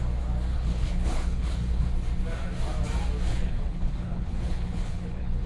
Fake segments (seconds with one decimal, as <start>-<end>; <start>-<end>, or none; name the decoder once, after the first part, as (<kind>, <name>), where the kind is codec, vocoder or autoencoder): 0.5-1.8 (codec, HILCodec); 3.3-5.5